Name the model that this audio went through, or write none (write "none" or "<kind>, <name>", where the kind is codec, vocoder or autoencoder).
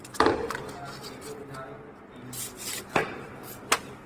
none